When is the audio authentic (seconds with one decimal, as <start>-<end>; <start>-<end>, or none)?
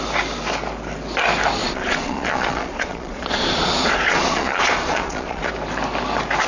0.0-1.6; 5.5-6.5